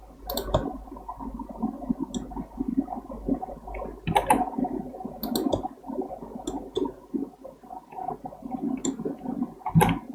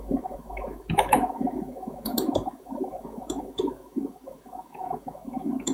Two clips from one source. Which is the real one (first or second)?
first